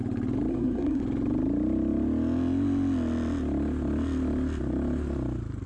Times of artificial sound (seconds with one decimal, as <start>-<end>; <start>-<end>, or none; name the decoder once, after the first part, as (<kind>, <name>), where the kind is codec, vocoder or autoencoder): 0.5-1.0 (codec, SNAC)